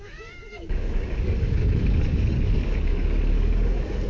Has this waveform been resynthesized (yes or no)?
yes